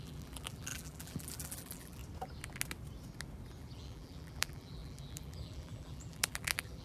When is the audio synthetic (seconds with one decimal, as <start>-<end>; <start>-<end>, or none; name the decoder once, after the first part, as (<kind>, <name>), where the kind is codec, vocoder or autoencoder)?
0.0-2.0 (vocoder, BigVGAN v2); 3.6-6.8